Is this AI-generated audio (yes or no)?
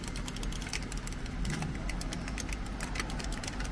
no